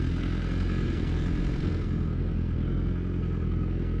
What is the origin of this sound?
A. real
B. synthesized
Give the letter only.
B